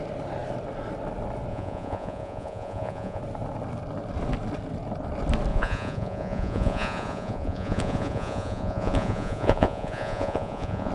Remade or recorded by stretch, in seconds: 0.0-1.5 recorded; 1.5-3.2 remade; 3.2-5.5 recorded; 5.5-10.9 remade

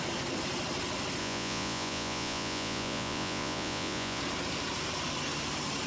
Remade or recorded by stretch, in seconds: 0.0-1.2 recorded; 1.2-4.2 remade; 4.2-5.9 recorded

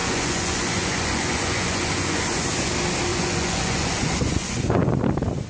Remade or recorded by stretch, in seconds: 0.0-2.7 remade; 2.7-3.1 recorded; 3.1-5.0 remade; 5.0-5.5 recorded

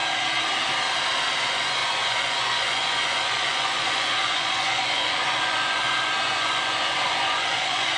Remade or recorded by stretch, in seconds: 0.0-1.4 recorded; 1.4-8.0 remade

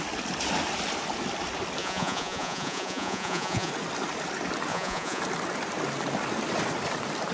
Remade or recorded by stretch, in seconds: 0.0-1.8 recorded; 1.8-3.7 remade; 3.7-4.7 recorded; 4.7-5.2 remade; 5.2-7.3 recorded

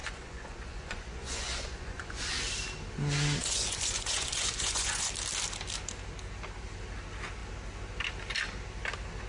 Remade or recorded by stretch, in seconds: 0.0-2.4 remade; 2.4-3.4 recorded; 3.4-5.1 remade; 5.1-9.3 recorded